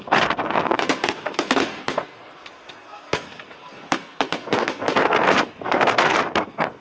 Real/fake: fake